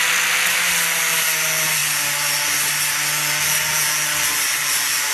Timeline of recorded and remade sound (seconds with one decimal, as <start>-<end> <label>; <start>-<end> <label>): 0.0-5.1 recorded